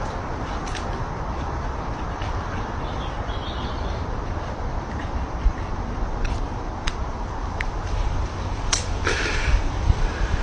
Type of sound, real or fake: fake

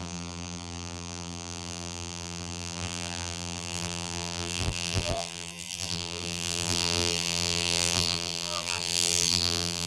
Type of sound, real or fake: fake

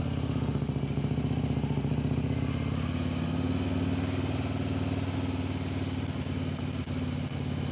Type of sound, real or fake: real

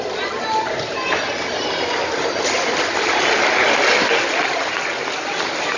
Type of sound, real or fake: real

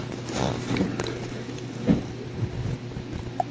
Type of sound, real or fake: fake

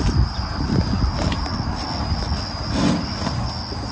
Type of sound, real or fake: real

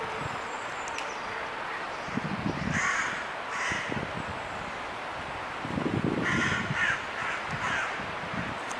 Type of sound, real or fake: real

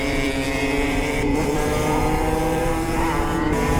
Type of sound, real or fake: fake